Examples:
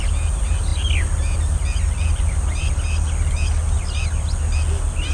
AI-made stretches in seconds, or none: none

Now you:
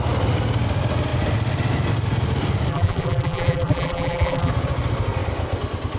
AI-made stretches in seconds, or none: 2.7-4.5 (vocoder, BigVGAN v2)

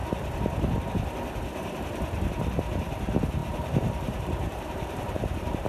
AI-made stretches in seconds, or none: 1.5-2.3 (vocoder, BigVGAN v2); 3.4-5.7

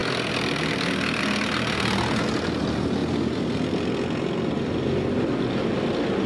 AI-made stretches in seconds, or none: 3.0-4.7 (vocoder, BigVGAN v2)

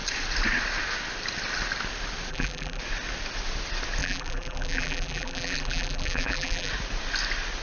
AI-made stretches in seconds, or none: 2.3-2.8 (vocoder, BigVGAN v2); 4.0-6.7

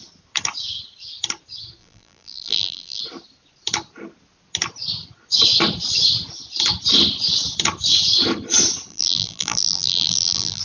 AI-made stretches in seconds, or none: 1.8-3.0 (vocoder, BigVGAN v2); 8.9-10.6

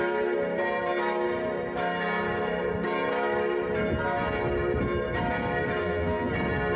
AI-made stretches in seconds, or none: 5.8-6.3 (vocoder, BigVGAN v2)

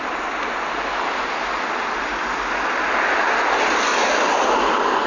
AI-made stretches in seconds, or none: none